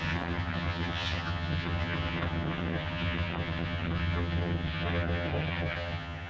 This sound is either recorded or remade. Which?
remade